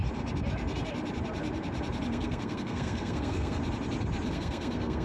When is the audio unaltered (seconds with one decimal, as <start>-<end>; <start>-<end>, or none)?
0.0-2.1; 3.6-4.3